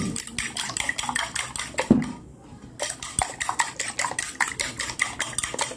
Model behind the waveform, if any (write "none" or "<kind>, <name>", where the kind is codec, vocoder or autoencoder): none